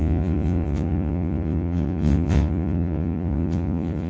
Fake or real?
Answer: fake